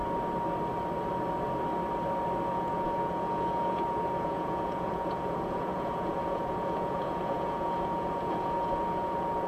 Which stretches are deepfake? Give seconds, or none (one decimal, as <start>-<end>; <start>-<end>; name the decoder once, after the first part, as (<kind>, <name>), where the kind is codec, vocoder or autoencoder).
2.5-9.5 (vocoder, Vocos)